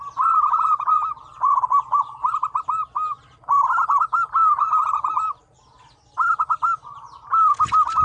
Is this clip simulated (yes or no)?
no